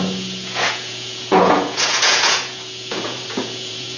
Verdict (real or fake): fake